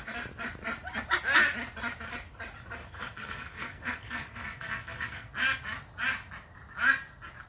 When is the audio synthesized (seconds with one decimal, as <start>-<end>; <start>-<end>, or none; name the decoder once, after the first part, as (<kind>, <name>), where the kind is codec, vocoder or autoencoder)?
2.8-5.3 (codec, SNAC)